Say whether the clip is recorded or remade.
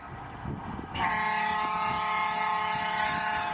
remade